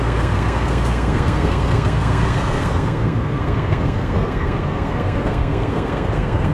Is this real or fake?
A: fake